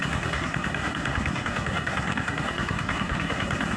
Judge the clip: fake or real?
fake